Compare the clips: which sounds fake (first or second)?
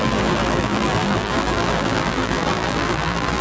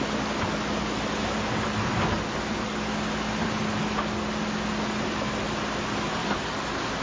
first